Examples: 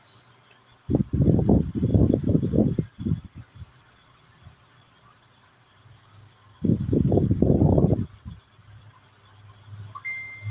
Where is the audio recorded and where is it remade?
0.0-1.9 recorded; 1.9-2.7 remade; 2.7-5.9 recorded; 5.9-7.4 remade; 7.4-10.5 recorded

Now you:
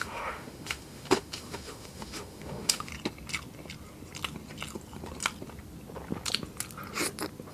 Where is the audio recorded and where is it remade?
0.0-2.9 remade; 2.9-7.5 recorded